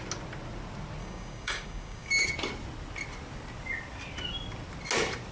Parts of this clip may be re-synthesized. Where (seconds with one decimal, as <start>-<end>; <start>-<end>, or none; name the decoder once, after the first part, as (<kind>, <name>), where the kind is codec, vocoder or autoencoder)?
1.0-2.1 (codec, DAC)